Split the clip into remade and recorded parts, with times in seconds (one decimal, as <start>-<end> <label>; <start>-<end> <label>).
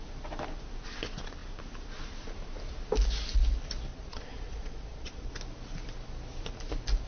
0.0-3.9 recorded; 3.9-5.3 remade; 5.3-7.1 recorded